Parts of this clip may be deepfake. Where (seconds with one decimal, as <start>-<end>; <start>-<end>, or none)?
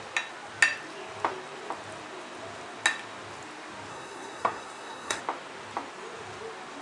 3.9-5.2